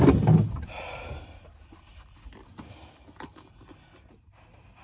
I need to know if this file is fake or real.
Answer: real